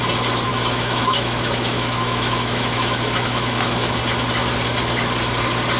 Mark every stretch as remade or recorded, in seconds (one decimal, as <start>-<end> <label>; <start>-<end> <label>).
0.0-0.5 recorded; 0.5-4.0 remade; 4.0-5.8 recorded